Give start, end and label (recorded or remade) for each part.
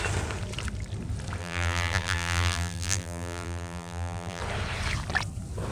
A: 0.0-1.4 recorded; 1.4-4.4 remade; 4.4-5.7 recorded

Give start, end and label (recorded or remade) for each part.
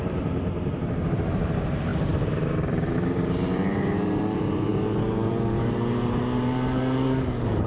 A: 0.0-7.7 remade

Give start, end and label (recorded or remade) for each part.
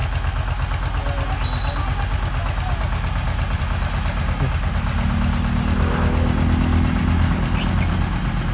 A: 0.0-8.5 recorded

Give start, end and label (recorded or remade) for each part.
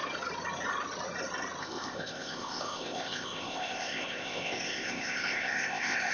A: 0.0-1.6 recorded; 1.6-6.1 remade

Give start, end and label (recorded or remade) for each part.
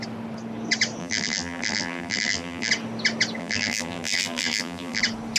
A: 0.0-1.0 recorded; 1.0-2.7 remade; 2.7-3.4 recorded; 3.4-5.0 remade; 5.0-5.4 recorded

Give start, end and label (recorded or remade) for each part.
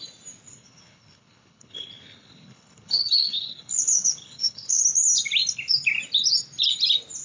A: 0.0-0.5 recorded; 0.5-4.8 remade; 4.8-7.2 recorded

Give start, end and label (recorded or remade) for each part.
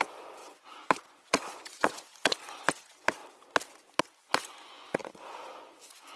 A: 0.0-3.2 remade; 3.2-4.0 recorded; 4.0-6.2 remade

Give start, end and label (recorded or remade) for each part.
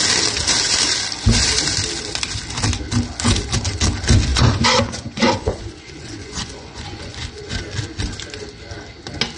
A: 0.0-4.3 recorded; 4.3-7.6 remade; 7.6-9.4 recorded